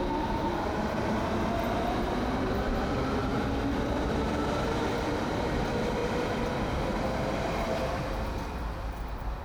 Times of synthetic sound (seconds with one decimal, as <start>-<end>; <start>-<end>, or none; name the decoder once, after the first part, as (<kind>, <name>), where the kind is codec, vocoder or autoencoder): 0.0-3.3 (vocoder, BigVGAN v2); 3.9-9.4